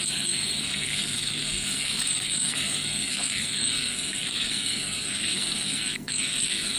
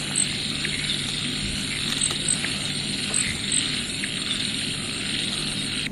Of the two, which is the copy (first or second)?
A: first